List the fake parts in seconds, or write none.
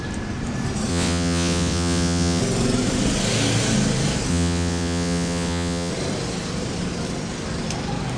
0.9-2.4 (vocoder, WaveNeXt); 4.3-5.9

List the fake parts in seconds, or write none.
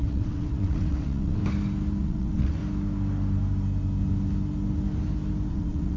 0.0-1.4 (vocoder, WaveNeXt); 2.0-2.6; 5.5-6.0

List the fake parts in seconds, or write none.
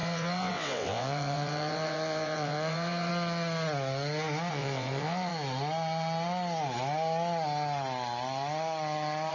0.0-3.1 (vocoder, WaveNeXt); 4.5-5.3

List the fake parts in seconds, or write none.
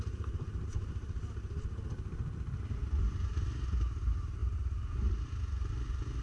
none